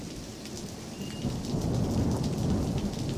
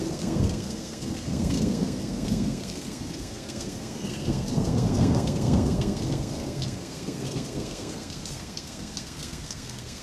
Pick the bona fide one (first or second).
first